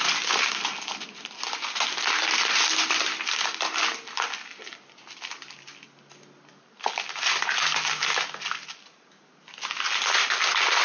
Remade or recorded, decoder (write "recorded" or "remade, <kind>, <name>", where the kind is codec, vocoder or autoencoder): recorded